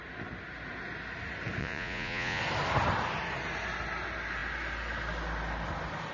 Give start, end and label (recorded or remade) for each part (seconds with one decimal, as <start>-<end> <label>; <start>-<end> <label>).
0.0-1.6 recorded; 1.6-2.4 remade; 2.4-6.1 recorded